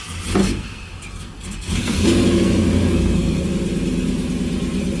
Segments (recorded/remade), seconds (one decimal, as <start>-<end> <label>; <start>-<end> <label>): 0.0-0.4 recorded; 0.4-3.4 remade; 3.4-5.0 recorded